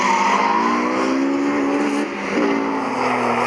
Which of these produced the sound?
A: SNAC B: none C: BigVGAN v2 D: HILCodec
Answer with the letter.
B